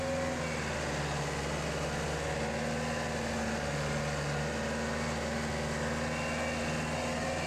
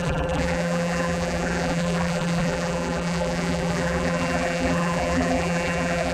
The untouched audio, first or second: first